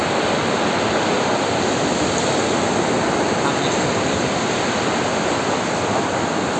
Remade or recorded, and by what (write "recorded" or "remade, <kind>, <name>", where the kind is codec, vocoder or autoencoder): recorded